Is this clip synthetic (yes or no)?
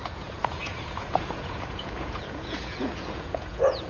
yes